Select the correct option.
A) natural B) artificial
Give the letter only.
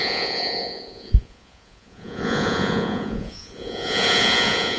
B